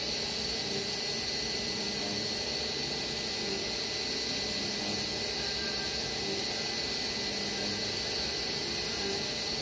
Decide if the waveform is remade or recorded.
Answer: recorded